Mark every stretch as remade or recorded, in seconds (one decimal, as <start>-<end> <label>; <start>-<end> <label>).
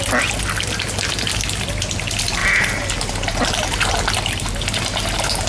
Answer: 0.0-5.5 recorded